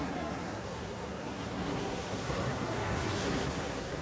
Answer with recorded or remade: remade